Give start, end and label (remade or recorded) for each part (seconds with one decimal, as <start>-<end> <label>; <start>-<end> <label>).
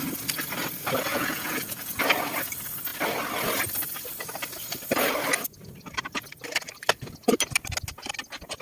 0.0-1.1 recorded; 1.1-2.0 remade; 2.0-8.6 recorded